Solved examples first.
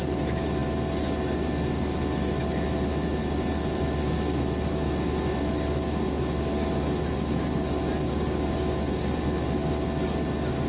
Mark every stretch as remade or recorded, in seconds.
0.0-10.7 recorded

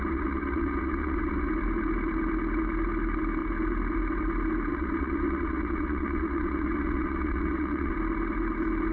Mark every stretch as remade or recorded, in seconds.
0.0-1.5 remade; 1.5-4.7 recorded; 4.7-7.9 remade; 7.9-8.9 recorded

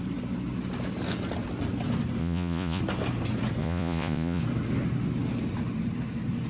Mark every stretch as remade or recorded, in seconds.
0.0-2.2 recorded; 2.2-2.8 remade; 2.8-3.6 recorded; 3.6-4.4 remade; 4.4-6.5 recorded